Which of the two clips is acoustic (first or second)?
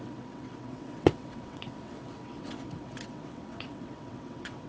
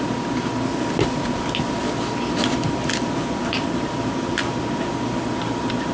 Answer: second